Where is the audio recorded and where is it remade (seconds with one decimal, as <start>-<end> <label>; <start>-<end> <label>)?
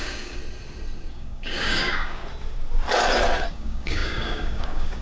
0.0-0.4 remade; 0.4-1.1 recorded; 1.1-2.2 remade; 2.2-3.5 recorded; 3.5-5.0 remade